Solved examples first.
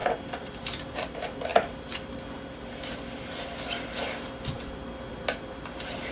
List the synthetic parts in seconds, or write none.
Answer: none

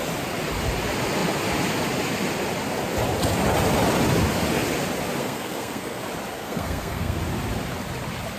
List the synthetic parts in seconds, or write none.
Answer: 5.2-6.0 (codec, SNAC); 6.4-7.2

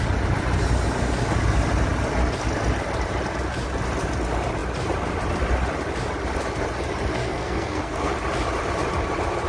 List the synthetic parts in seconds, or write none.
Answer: 7.1-8.1 (codec, SNAC)

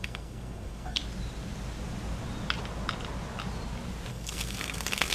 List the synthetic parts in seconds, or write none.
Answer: 0.0-1.0 (codec, SNAC); 4.1-5.1

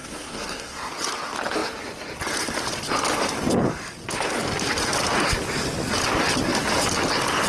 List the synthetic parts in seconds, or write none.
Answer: 0.0-0.9 (codec, SNAC)

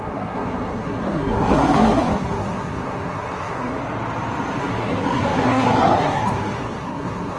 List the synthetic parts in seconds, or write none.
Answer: 0.0-3.8 (codec, SNAC); 4.6-7.4

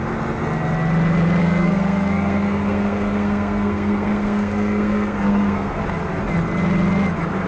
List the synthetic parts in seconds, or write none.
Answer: 1.4-5.8 (codec, SNAC)

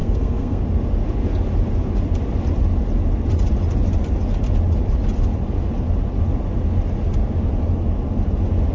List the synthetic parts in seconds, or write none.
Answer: 0.0-0.6 (codec, SNAC)